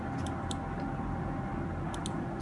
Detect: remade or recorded recorded